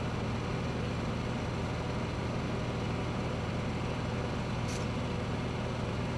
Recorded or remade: recorded